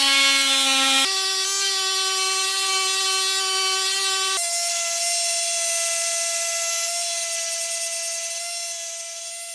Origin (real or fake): real